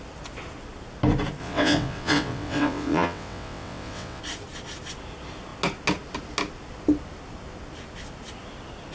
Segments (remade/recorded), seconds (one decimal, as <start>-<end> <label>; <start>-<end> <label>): 0.0-1.4 recorded; 1.4-4.2 remade; 4.2-8.9 recorded

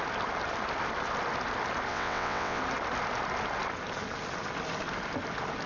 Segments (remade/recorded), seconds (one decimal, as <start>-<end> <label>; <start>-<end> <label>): 0.0-1.9 recorded; 1.9-2.6 remade; 2.6-5.7 recorded